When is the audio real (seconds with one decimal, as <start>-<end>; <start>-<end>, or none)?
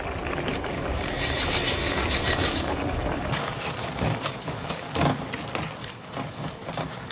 0.0-0.5; 1.2-1.8; 5.2-5.8